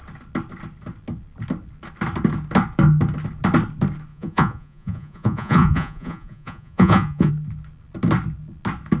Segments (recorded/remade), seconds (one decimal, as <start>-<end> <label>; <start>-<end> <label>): 0.0-4.1 recorded; 4.1-7.3 remade; 7.3-9.0 recorded